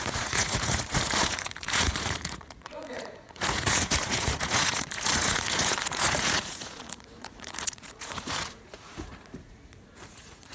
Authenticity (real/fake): fake